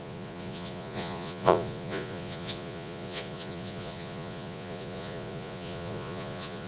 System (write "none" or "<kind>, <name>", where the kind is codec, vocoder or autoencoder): vocoder, Vocos